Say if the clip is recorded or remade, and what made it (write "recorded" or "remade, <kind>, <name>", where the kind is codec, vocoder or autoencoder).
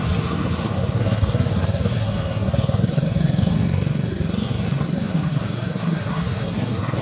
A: remade, codec, SNAC